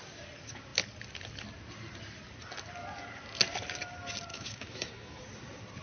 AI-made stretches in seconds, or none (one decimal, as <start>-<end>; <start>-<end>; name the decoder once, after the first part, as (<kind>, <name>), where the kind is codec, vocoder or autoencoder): 4.3-5.2 (autoencoder, DAC-VAE)